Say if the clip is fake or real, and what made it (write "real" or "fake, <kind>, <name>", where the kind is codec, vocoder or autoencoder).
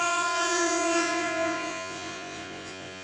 fake, vocoder, Vocos